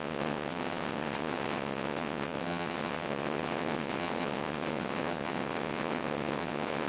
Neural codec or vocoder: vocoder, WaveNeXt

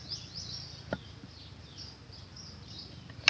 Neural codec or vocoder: none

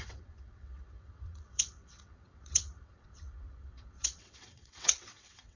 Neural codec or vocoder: vocoder, WaveNeXt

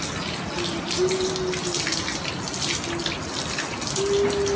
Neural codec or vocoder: none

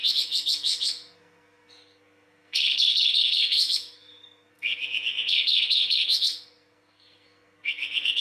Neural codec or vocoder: codec, SNAC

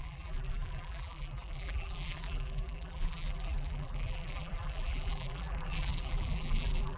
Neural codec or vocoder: vocoder, BigVGAN v2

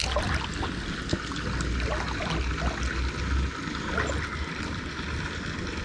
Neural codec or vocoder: none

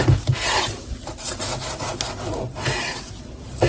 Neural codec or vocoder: none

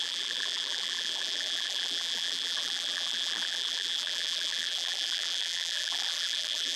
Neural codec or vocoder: vocoder, BigVGAN v2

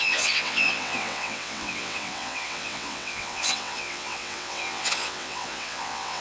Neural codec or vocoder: vocoder, WaveNeXt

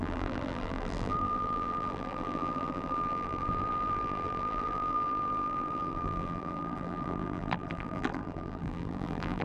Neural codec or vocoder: vocoder, BigVGAN v2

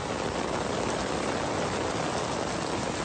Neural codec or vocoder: none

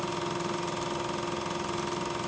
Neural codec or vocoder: none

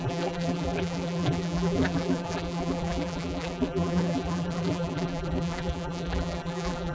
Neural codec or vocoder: vocoder, BigVGAN v2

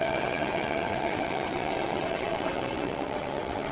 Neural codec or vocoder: vocoder, WaveNeXt